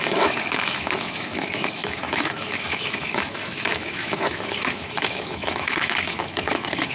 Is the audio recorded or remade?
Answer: remade